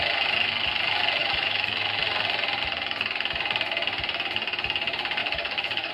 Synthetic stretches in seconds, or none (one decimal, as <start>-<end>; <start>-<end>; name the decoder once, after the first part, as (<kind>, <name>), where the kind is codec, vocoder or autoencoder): 1.2-2.0 (autoencoder, DAC-VAE); 5.2-5.9